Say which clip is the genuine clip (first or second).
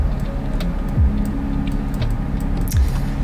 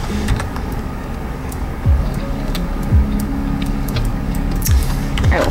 first